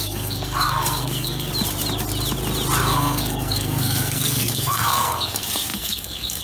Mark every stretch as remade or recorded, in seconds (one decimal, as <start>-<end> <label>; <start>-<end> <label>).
0.0-1.5 remade; 1.5-2.8 recorded; 2.8-6.4 remade